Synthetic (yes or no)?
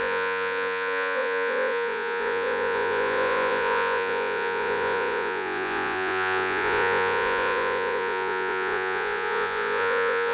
yes